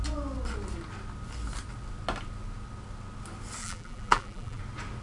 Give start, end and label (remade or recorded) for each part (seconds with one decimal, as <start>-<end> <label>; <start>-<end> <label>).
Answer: 0.0-3.6 recorded; 3.6-4.6 remade; 4.6-5.0 recorded